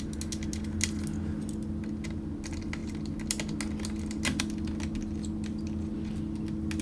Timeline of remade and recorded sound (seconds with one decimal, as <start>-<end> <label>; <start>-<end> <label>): 0.0-6.8 recorded